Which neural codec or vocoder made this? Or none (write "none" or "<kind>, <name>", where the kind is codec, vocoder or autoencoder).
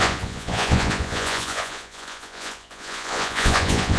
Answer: vocoder, Vocos